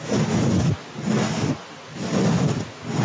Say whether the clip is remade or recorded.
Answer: recorded